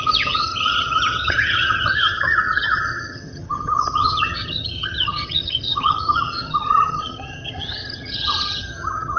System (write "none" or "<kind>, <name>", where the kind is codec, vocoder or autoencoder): vocoder, HiFi-GAN